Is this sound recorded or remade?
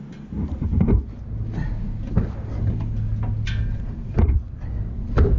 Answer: recorded